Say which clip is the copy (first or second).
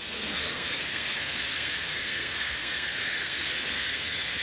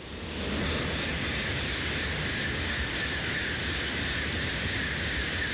first